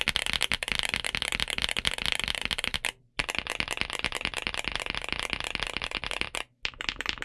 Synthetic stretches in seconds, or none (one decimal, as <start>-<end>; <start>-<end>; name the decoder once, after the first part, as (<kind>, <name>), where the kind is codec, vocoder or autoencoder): none